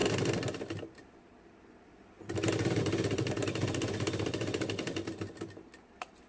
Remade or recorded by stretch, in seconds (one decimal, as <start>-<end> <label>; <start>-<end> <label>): 0.0-6.3 recorded